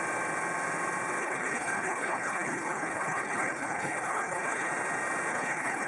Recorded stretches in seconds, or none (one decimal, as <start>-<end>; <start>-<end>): 0.0-1.2; 4.7-5.3